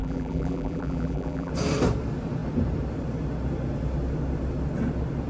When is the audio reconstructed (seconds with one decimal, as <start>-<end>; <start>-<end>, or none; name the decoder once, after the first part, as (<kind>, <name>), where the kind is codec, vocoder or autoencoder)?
0.0-1.5 (vocoder, BigVGAN v2)